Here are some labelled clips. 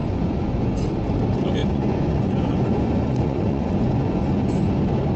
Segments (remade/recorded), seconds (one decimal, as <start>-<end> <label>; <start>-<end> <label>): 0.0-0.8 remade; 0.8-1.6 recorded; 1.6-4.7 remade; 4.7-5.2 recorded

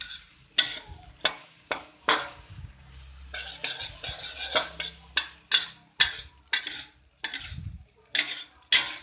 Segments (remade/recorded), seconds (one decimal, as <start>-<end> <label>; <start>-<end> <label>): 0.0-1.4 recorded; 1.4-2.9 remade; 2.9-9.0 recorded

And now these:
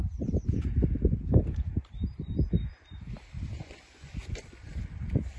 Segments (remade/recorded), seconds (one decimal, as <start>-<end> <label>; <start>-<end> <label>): 0.0-3.6 recorded; 3.6-4.7 remade; 4.7-5.4 recorded

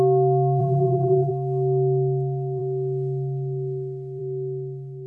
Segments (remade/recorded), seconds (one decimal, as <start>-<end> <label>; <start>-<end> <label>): 0.0-0.6 recorded; 0.6-1.3 remade; 1.3-5.1 recorded

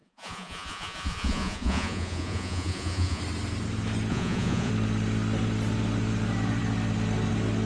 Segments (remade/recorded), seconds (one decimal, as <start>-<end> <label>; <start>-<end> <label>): 0.0-3.2 remade; 3.2-4.1 recorded; 4.1-4.7 remade; 4.7-7.7 recorded

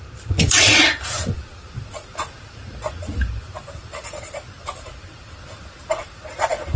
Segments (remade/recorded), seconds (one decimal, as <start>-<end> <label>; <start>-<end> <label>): 0.0-2.7 remade; 2.7-3.7 recorded; 3.7-6.8 remade

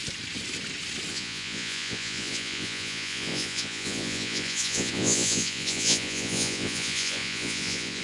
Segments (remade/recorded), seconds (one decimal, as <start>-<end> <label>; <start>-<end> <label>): 0.0-1.1 recorded; 1.1-8.0 remade

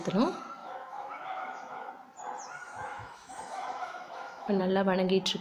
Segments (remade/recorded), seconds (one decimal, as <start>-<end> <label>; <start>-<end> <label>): 0.0-0.6 recorded; 0.6-1.9 remade; 1.9-2.6 recorded; 2.6-4.6 remade; 4.6-5.4 recorded